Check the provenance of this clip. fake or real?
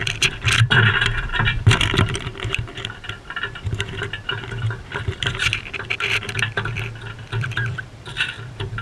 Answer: fake